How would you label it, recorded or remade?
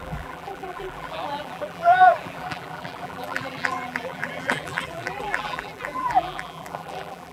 remade